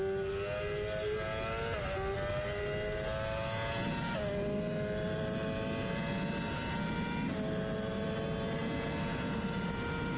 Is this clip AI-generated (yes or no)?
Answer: no